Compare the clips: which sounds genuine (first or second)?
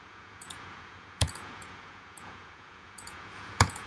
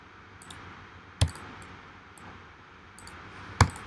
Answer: second